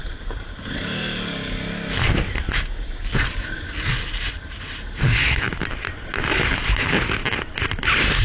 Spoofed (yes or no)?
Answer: no